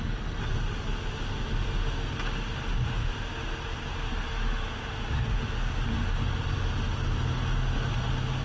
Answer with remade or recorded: recorded